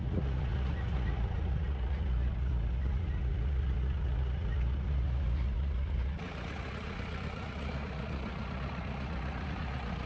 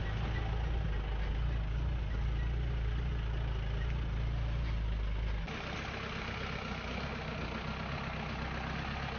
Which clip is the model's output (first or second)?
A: first